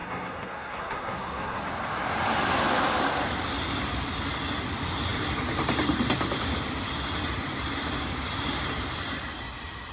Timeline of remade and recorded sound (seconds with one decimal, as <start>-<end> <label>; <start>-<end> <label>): 0.0-1.6 remade; 1.6-9.9 recorded